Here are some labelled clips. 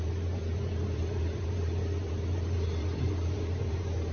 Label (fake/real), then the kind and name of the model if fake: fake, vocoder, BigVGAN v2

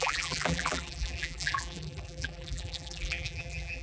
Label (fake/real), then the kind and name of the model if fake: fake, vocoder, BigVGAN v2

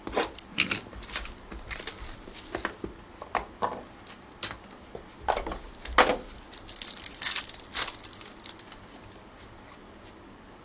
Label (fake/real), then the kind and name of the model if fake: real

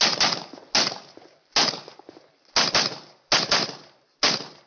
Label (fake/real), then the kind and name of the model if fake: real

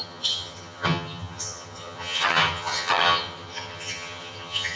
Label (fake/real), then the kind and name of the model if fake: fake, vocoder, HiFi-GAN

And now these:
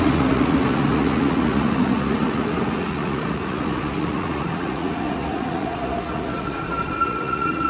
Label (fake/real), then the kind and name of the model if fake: fake, vocoder, Vocos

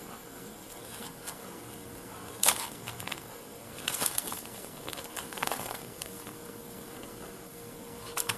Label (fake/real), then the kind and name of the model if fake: fake, codec, SNAC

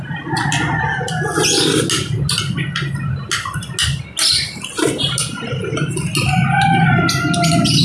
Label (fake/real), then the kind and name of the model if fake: real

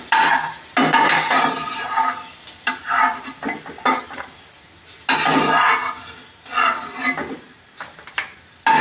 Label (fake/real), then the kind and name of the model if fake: real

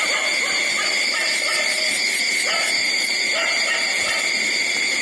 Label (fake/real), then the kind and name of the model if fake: fake, vocoder, BigVGAN v2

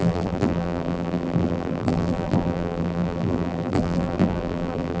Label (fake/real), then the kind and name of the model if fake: fake, vocoder, BigVGAN v2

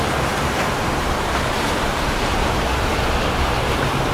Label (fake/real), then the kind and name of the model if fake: fake, vocoder, BigVGAN v2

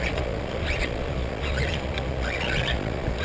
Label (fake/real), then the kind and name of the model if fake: fake, vocoder, Vocos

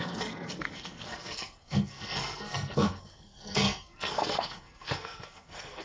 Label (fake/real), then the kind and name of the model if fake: fake, codec, SNAC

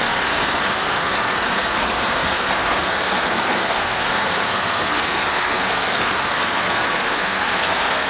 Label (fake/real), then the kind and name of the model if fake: fake, codec, SNAC